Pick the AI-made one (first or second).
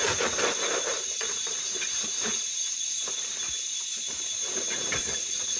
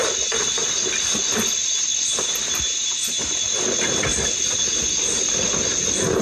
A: first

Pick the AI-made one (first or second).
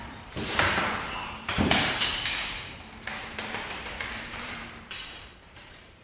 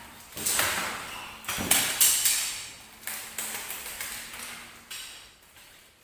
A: first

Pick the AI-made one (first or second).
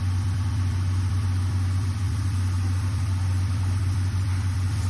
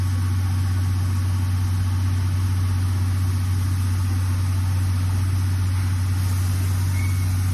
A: first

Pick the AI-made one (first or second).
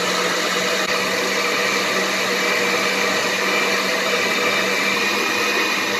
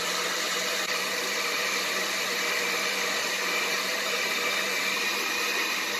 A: second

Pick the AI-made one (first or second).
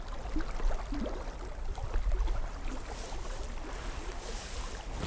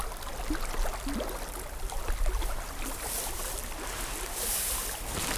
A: first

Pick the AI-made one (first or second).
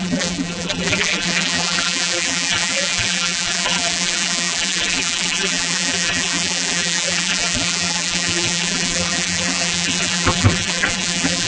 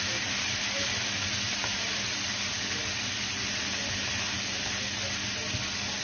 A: first